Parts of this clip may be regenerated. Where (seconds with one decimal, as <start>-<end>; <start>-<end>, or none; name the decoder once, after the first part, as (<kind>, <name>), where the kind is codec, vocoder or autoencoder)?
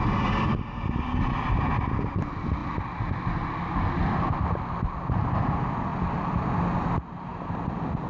5.9-6.5 (vocoder, BigVGAN v2); 7.3-8.1